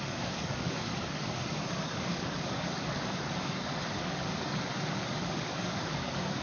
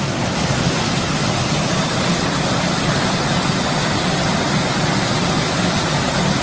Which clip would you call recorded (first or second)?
second